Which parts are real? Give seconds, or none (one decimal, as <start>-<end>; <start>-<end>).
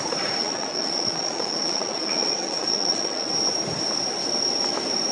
0.0-0.4; 3.3-5.1